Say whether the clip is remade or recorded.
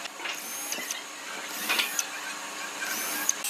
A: recorded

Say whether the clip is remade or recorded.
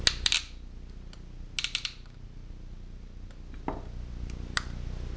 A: recorded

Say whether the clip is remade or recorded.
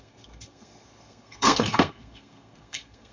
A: remade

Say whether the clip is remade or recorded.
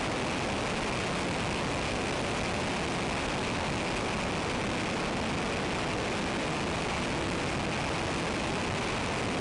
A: recorded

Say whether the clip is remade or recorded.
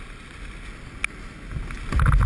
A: recorded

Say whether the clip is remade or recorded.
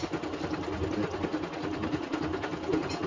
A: recorded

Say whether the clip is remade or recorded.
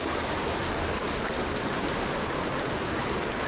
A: recorded